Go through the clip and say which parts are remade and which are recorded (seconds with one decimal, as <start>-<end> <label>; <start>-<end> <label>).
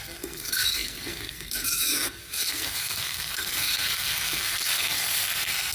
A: 0.0-5.7 remade